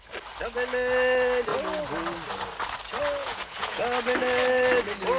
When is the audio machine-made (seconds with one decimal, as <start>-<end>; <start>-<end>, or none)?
3.2-3.8